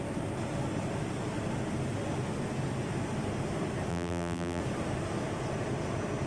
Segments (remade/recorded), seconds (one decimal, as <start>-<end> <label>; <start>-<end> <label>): 0.0-3.9 recorded; 3.9-4.6 remade; 4.6-6.3 recorded